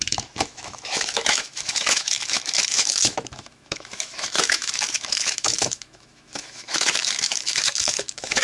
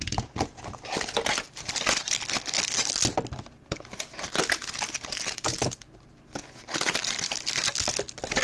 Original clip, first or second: second